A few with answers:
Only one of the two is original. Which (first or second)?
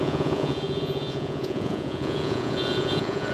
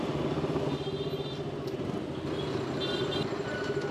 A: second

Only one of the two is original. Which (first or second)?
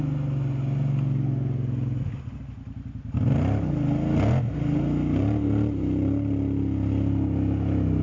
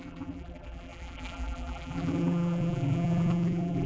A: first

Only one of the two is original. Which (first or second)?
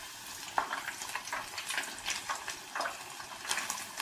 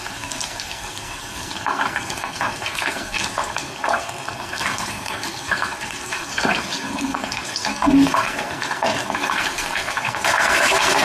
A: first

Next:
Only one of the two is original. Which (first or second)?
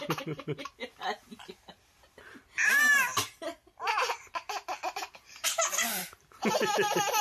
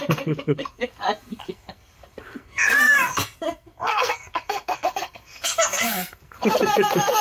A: first